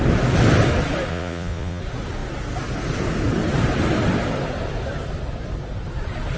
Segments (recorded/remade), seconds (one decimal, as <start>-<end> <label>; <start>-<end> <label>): 0.0-1.1 recorded; 1.1-1.8 remade; 1.8-6.4 recorded